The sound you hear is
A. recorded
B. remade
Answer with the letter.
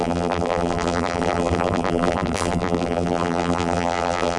B